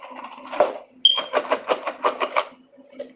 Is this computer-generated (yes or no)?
no